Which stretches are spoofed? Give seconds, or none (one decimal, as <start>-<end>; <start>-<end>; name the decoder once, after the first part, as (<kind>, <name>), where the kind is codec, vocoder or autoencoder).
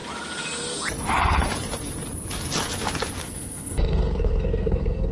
3.2-5.1 (codec, SNAC)